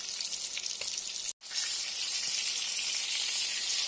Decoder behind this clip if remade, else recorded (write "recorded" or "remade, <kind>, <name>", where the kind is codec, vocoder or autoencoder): recorded